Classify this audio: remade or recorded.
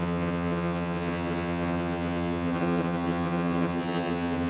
remade